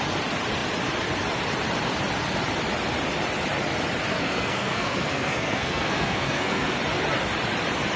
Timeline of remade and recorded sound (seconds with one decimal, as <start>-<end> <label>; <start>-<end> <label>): 0.0-4.1 recorded; 4.1-6.8 remade; 6.8-8.0 recorded